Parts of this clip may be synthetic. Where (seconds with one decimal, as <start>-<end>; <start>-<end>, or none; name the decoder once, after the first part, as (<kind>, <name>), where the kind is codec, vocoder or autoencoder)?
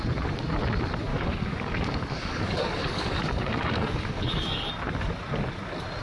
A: 1.1-4.7 (codec, DAC)